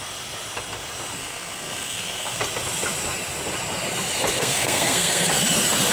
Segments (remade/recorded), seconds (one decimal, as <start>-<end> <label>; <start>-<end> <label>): 0.0-1.2 recorded; 1.2-2.4 remade; 2.4-4.4 recorded; 4.4-5.3 remade; 5.3-5.9 recorded